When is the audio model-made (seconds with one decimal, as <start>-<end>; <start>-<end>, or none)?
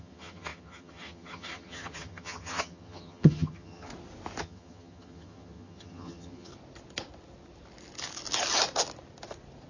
0.0-3.9; 4.4-6.5